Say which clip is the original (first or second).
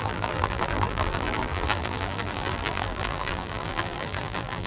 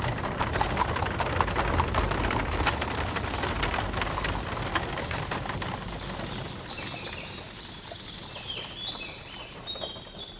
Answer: second